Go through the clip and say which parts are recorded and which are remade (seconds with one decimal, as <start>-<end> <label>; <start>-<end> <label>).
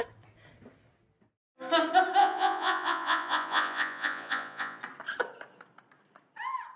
0.0-2.2 recorded; 2.2-4.8 remade; 4.8-6.8 recorded